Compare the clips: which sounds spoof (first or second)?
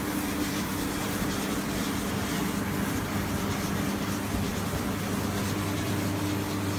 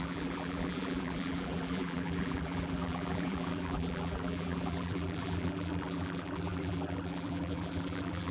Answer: second